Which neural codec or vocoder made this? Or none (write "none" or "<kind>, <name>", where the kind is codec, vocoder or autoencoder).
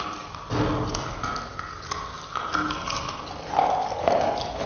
none